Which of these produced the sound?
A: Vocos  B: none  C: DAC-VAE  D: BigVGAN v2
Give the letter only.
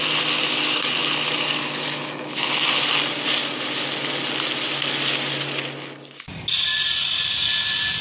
B